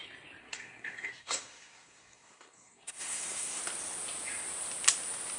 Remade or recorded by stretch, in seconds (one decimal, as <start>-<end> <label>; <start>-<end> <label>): 0.0-0.4 recorded; 0.4-3.6 remade; 3.6-5.4 recorded

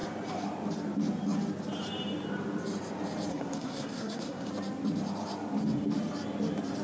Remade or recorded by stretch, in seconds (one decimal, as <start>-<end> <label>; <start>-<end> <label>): 0.0-3.3 recorded; 3.3-4.5 remade; 4.5-6.8 recorded

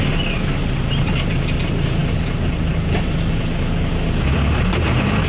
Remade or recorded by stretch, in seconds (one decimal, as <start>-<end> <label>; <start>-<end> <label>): 0.0-5.3 recorded

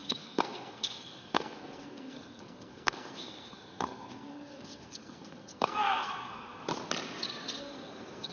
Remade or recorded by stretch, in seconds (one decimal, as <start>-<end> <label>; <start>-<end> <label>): 0.0-6.6 remade; 6.6-7.6 recorded; 7.6-8.3 remade

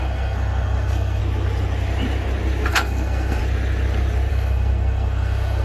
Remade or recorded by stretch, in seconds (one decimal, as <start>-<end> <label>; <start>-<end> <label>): 0.0-1.2 remade; 1.2-2.7 recorded; 2.7-3.4 remade; 3.4-4.3 recorded; 4.3-5.6 remade

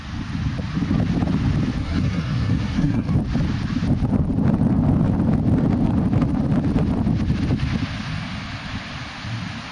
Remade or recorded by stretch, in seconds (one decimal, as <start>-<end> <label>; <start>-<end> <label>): 0.0-1.8 recorded; 1.8-3.1 remade; 3.1-9.7 recorded